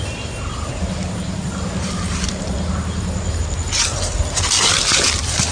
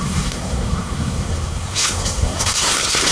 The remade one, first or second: second